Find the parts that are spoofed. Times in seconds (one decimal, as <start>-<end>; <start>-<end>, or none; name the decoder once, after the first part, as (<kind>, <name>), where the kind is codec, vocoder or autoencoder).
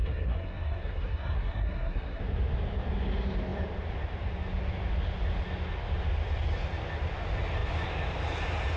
0.0-2.2 (codec, SNAC)